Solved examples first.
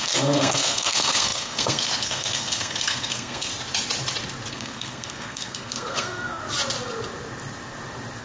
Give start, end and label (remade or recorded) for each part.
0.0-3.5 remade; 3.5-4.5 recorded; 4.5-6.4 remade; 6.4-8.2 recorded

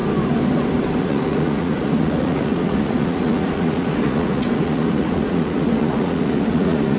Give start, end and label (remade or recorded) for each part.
0.0-1.0 recorded; 1.0-7.0 remade

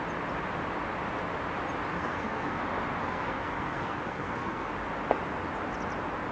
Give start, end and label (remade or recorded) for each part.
0.0-1.9 recorded; 1.9-2.6 remade; 2.6-3.0 recorded; 3.0-4.7 remade; 4.7-6.3 recorded

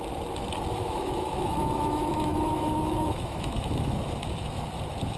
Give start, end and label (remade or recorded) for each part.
0.0-0.8 recorded; 0.8-3.9 remade; 3.9-5.2 recorded

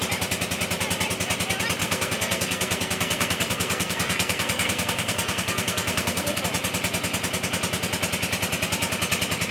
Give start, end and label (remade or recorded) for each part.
0.0-1.8 recorded; 1.8-6.4 remade; 6.4-9.5 recorded

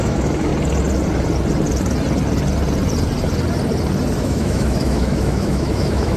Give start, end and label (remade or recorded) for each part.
0.0-0.5 remade; 0.5-4.2 recorded; 4.2-6.2 remade

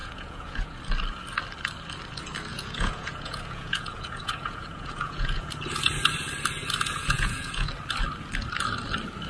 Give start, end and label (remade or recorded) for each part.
0.0-0.8 remade; 0.8-2.5 recorded; 2.5-5.5 remade; 5.5-7.0 recorded; 7.0-7.7 remade; 7.7-9.3 recorded